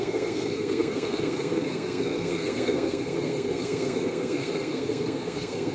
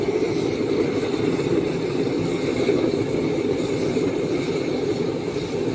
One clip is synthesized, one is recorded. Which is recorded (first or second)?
second